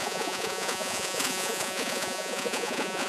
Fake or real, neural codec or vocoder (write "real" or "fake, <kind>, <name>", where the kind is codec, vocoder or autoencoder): fake, vocoder, Vocos